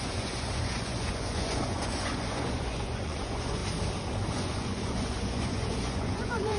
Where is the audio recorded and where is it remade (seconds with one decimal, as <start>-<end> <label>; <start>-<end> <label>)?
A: 0.0-3.6 remade; 3.6-4.3 recorded; 4.3-6.6 remade